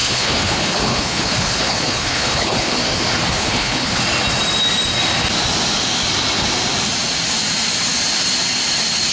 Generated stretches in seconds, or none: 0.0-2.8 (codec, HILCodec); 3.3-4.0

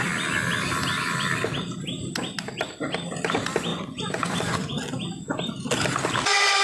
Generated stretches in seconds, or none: 3.7-4.8 (vocoder, Vocos)